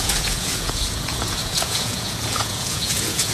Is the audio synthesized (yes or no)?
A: yes